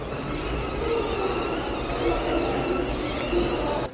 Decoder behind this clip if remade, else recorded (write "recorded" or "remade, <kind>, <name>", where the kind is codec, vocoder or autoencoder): recorded